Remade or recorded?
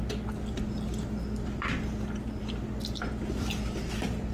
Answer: recorded